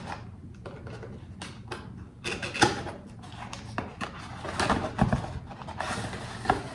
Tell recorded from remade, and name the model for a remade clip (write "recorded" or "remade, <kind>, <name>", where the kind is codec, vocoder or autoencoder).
recorded